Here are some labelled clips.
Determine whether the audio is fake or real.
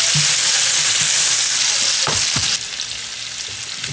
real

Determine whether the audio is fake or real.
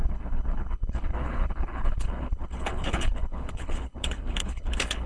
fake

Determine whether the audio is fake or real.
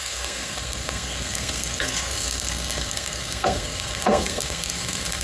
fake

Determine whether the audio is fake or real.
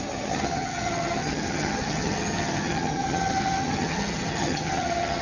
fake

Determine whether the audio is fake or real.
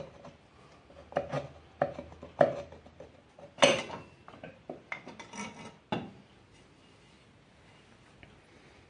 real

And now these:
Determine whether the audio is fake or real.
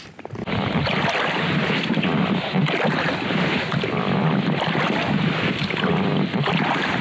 real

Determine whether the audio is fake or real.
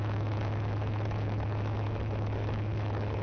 fake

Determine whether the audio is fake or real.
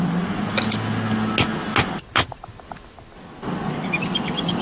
real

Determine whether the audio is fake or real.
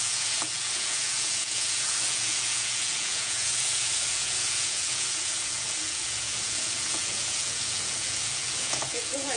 fake